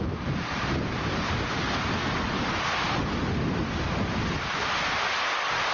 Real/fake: real